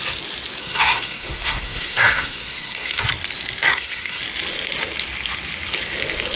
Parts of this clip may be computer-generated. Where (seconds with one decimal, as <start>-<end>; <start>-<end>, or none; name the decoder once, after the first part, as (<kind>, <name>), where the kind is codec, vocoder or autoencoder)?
0.6-3.1 (codec, SNAC); 3.7-4.2